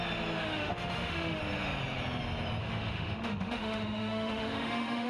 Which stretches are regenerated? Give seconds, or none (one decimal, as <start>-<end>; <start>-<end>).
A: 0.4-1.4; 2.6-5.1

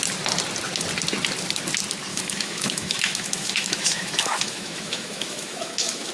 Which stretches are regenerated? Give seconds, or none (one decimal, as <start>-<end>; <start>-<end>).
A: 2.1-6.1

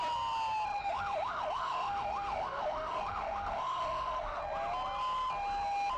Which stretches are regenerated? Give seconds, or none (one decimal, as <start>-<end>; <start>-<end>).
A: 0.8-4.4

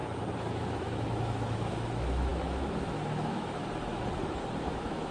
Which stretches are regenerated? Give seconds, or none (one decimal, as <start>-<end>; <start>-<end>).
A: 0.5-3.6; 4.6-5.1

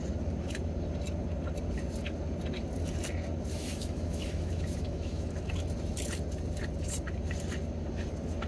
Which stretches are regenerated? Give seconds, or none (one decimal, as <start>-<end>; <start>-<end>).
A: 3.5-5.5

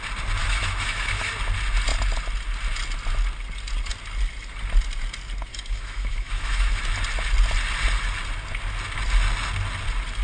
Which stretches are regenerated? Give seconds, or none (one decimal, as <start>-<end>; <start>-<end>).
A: 0.4-1.3; 5.5-6.8

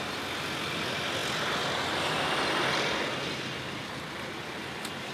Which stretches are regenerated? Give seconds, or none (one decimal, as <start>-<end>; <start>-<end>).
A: none

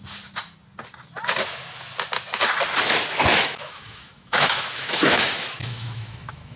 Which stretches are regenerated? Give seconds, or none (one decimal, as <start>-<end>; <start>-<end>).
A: 3.3-6.6